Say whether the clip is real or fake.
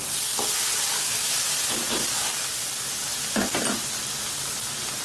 real